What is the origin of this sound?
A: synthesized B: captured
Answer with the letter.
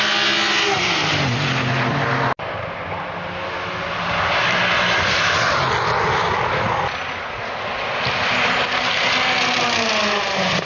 B